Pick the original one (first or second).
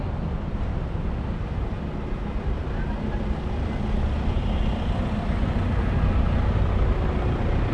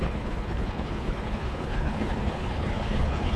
first